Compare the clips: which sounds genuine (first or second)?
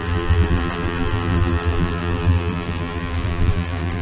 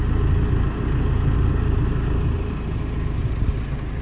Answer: second